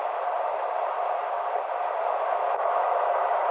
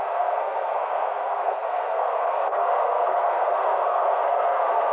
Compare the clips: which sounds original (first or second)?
first